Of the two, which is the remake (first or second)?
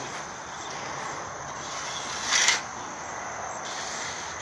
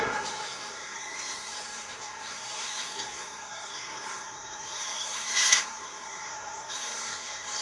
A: second